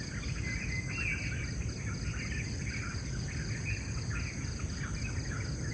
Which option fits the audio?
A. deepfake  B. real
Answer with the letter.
B